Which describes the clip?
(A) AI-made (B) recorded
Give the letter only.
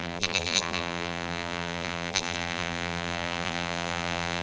A